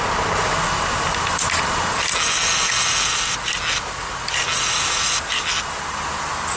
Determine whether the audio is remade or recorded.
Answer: recorded